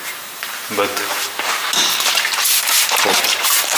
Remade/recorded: remade